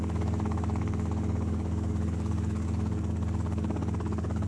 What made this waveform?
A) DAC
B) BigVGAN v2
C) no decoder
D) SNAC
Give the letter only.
A